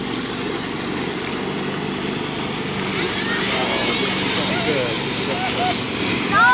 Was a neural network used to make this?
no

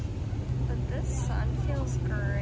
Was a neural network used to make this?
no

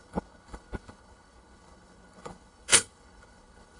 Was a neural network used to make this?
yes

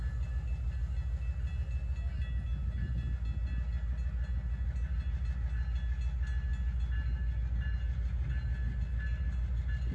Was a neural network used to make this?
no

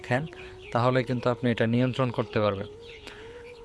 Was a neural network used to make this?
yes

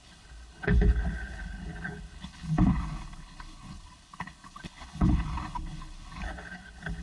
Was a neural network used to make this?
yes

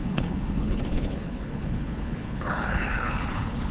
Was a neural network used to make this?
yes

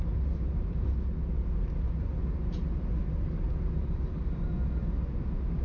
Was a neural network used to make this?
no